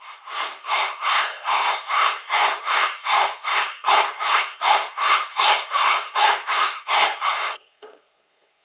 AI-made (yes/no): yes